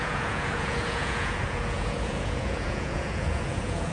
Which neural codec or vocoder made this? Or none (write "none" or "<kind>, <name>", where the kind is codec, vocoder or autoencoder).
vocoder, Vocos